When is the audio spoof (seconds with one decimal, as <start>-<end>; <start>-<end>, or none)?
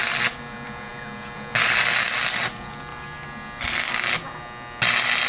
none